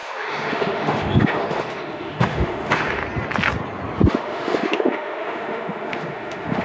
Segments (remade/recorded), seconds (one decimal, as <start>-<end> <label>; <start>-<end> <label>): 0.0-3.0 remade; 3.0-4.1 recorded; 4.1-6.6 remade